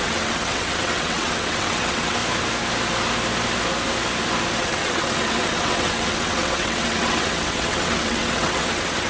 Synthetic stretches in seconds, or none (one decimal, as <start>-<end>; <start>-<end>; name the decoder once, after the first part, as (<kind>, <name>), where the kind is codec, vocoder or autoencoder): 0.0-2.2 (vocoder, WaveNeXt); 4.6-9.1